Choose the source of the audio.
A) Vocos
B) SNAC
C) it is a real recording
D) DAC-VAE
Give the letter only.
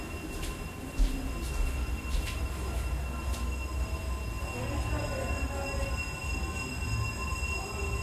C